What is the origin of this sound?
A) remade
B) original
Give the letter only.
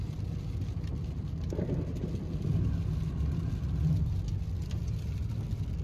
B